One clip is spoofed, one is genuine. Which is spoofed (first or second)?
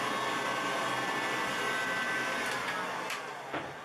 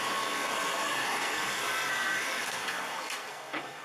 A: second